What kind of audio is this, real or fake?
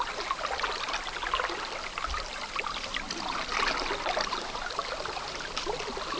real